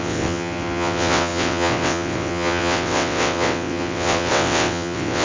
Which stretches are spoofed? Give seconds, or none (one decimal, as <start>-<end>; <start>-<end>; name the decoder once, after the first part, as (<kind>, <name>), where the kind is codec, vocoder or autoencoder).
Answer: 0.0-5.2 (vocoder, WaveNeXt)

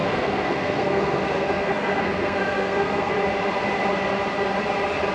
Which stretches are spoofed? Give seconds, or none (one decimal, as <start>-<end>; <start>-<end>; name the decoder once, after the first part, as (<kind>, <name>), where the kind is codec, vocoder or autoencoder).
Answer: 0.0-3.1 (codec, SNAC)

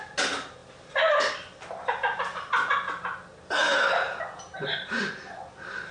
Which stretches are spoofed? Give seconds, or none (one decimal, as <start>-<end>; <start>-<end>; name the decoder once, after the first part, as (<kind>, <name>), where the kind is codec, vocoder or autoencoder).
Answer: none

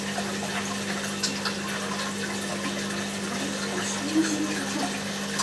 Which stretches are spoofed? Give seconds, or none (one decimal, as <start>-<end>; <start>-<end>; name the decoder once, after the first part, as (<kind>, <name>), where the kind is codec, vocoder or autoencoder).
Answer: none

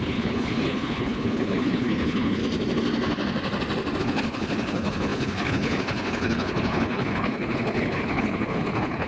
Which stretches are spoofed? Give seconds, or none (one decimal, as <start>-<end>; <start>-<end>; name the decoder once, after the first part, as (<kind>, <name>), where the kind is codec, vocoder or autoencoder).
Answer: 0.0-2.4 (codec, HILCodec); 4.0-9.1

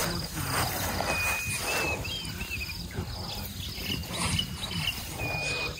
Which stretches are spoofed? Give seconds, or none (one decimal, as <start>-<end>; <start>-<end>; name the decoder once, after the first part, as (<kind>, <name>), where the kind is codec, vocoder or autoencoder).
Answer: none

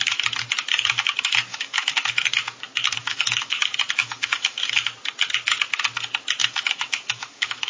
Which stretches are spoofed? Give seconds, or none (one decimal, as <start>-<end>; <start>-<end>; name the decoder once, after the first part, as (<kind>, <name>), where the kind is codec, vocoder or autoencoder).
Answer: 1.5-2.1 (autoencoder, DAC-VAE); 3.0-3.6; 4.0-4.6; 6.4-7.7

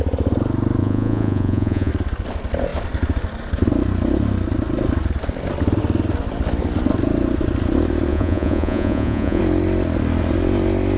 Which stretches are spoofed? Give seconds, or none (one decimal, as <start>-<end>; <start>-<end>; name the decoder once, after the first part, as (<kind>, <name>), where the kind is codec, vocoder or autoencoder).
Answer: 0.8-1.9 (vocoder, Vocos); 8.1-9.4